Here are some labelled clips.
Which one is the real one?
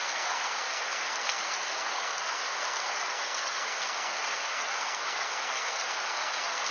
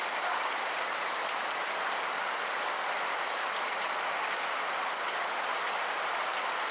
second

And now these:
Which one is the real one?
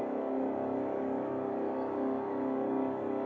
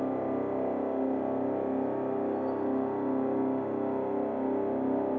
second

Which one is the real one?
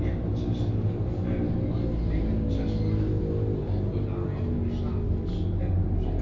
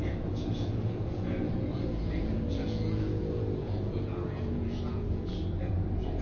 first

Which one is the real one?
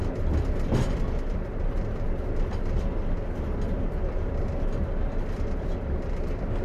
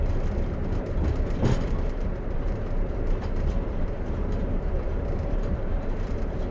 first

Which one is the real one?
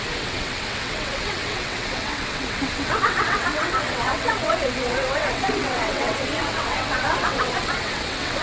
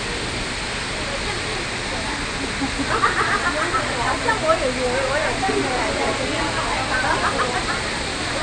second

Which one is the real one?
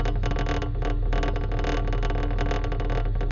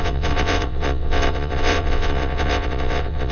first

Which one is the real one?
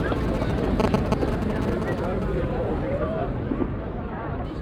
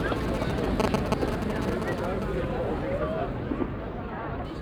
second